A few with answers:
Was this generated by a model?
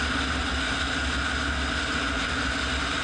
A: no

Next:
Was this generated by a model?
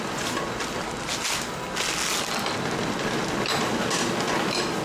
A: no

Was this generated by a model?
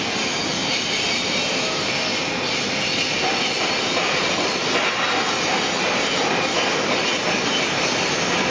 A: no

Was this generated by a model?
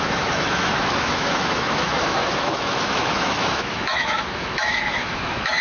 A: yes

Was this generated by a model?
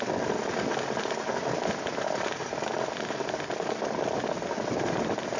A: no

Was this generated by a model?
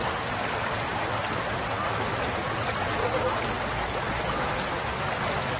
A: no